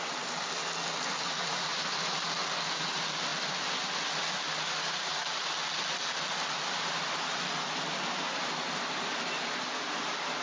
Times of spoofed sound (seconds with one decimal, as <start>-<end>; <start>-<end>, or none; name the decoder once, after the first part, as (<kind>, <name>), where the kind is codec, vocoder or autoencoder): none